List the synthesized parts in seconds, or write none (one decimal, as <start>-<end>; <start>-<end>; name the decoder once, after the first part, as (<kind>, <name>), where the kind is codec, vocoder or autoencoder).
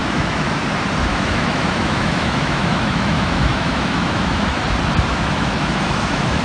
0.0-0.6 (autoencoder, DAC-VAE); 1.1-4.6; 5.1-6.4